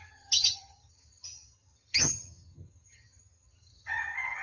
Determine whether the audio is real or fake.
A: fake